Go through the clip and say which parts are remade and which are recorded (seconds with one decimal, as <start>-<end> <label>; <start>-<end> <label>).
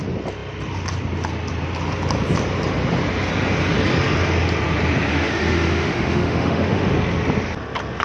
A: 0.0-5.1 recorded; 5.1-6.9 remade; 6.9-8.0 recorded